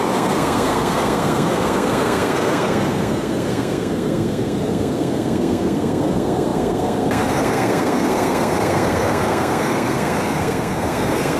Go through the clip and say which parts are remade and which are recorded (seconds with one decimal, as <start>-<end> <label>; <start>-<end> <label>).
0.0-11.4 remade